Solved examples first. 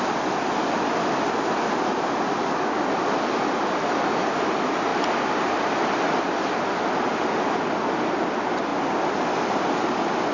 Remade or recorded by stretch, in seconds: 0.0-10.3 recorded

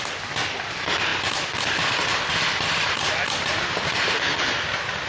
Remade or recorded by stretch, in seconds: 0.0-5.1 recorded

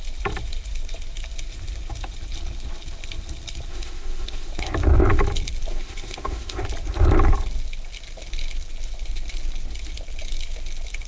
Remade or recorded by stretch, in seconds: 0.0-3.7 recorded; 3.7-4.5 remade; 4.5-5.7 recorded; 5.7-6.6 remade; 6.6-11.1 recorded

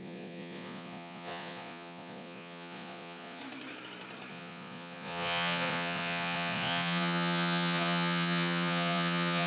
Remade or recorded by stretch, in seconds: 0.0-3.4 remade; 3.4-4.3 recorded; 4.3-9.5 remade

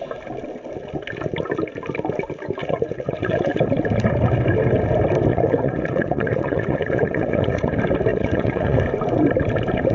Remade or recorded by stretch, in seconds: 0.0-2.6 recorded; 2.6-3.6 remade; 3.6-5.3 recorded; 5.3-7.7 remade; 7.7-8.1 recorded; 8.1-8.8 remade; 8.8-9.9 recorded